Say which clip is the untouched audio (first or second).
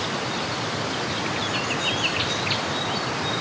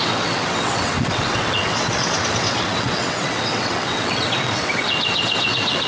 first